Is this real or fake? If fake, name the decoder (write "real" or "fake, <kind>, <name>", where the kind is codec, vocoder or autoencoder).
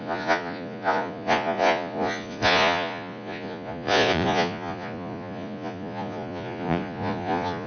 fake, vocoder, Vocos